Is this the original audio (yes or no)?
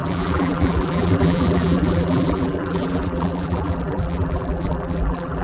no